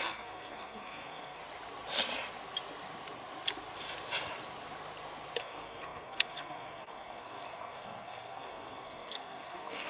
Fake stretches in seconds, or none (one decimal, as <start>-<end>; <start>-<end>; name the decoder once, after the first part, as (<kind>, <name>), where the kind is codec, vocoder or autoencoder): 0.0-1.4 (codec, SNAC); 5.4-9.9

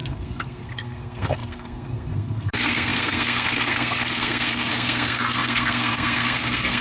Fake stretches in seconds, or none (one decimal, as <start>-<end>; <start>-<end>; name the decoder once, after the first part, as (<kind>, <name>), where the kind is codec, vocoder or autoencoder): 0.0-6.8 (codec, SNAC)

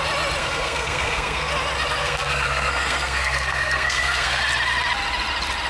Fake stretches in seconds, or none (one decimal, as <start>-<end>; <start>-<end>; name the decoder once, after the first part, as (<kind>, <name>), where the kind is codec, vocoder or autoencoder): 0.4-1.5 (codec, SNAC); 2.0-4.4